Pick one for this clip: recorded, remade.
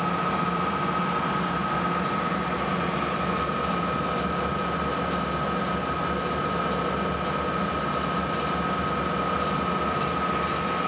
recorded